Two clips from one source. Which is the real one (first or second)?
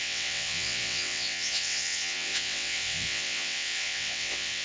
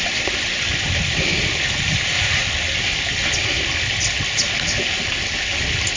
second